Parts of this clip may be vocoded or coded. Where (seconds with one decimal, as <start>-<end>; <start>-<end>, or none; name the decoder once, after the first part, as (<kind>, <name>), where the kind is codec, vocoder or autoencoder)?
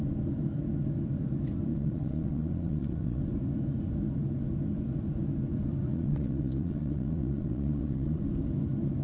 1.7-3.2 (vocoder, Vocos); 5.9-8.2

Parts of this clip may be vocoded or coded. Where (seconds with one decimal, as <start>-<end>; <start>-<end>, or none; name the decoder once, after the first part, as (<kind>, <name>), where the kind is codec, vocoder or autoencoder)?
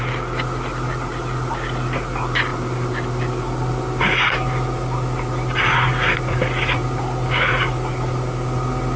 none